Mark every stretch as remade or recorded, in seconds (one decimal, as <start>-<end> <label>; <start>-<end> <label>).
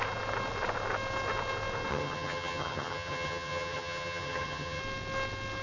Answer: 0.0-1.9 recorded; 1.9-4.8 remade; 4.8-5.6 recorded